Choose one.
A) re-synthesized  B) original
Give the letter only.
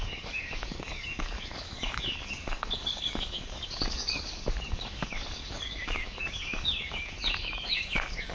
A